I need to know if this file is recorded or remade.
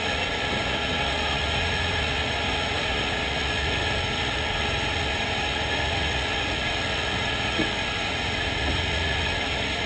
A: remade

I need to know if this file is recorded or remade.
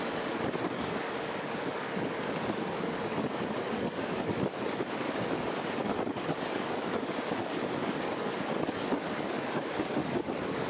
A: remade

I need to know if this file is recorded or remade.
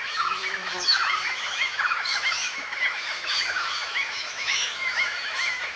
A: remade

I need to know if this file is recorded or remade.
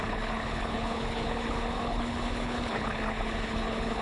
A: remade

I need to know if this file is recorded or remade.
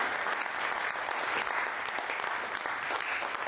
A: recorded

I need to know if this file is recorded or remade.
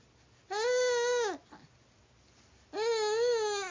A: recorded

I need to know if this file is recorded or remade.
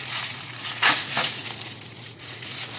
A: remade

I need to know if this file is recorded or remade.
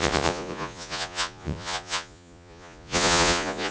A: remade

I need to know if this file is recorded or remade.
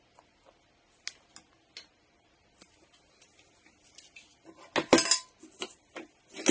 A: recorded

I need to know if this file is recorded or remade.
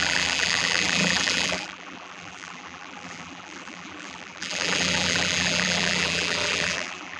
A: remade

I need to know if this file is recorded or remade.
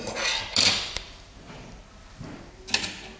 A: recorded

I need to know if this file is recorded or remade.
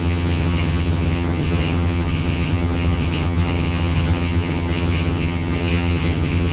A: remade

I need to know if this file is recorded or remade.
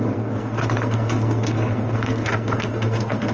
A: remade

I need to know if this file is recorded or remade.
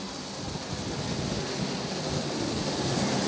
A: recorded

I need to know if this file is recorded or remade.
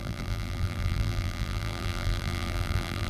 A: remade